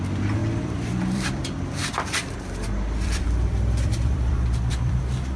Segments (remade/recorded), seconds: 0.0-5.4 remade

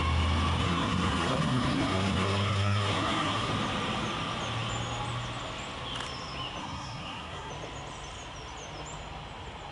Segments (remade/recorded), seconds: 0.0-0.6 recorded; 0.6-3.5 remade; 3.5-6.6 recorded; 6.6-7.5 remade; 7.5-9.7 recorded